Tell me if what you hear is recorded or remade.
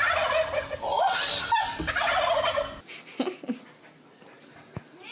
recorded